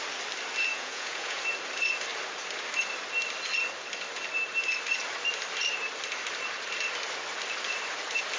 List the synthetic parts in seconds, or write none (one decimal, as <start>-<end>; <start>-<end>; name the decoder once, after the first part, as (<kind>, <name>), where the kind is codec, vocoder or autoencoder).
0.7-1.4 (vocoder, Vocos)